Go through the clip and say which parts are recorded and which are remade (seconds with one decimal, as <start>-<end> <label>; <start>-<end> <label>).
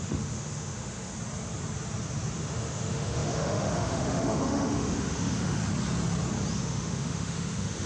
0.0-1.1 remade; 1.1-2.4 recorded; 2.4-5.6 remade; 5.6-6.6 recorded; 6.6-7.9 remade